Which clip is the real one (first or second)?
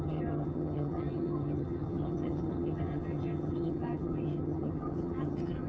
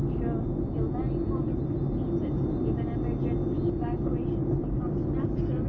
second